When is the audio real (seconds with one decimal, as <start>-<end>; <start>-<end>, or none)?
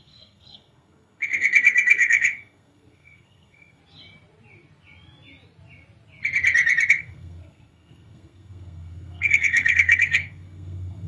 3.8-6.9